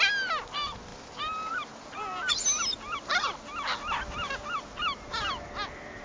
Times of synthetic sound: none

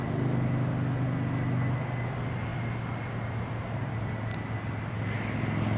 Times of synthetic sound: none

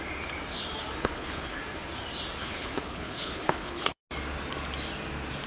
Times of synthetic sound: 1.0-1.6 (codec, HILCodec); 2.4-4.0

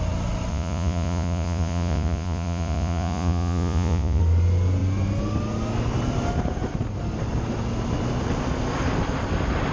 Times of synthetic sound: 0.5-4.2 (vocoder, Vocos)

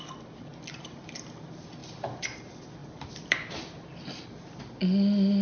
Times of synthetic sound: 1.8-2.4 (vocoder, BigVGAN v2); 2.8-4.5

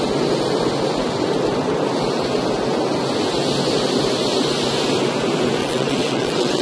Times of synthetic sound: 5.6-6.6 (vocoder, WaveNeXt)